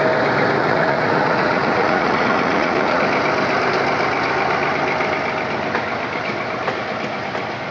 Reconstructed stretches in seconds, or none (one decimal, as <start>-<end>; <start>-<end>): 0.6-3.0